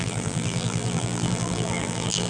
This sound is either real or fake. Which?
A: fake